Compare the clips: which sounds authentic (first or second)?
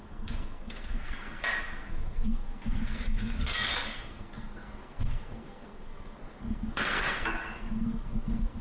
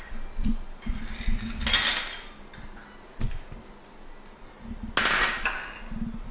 second